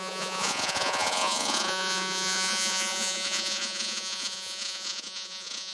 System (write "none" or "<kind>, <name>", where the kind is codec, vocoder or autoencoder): vocoder, Vocos